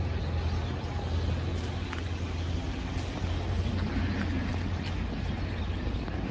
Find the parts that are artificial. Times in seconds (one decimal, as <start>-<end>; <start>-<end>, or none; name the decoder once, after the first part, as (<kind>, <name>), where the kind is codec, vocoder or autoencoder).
none